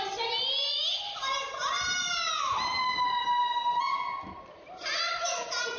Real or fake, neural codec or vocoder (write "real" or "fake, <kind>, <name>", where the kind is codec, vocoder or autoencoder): real